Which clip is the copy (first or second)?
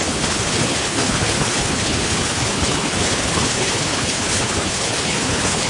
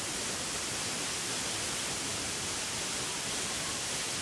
first